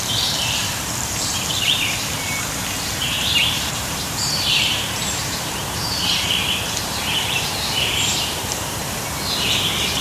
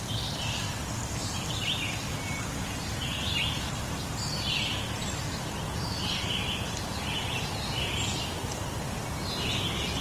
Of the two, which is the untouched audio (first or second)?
second